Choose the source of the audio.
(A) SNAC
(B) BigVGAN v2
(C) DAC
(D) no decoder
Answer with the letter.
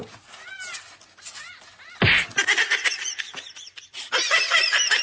D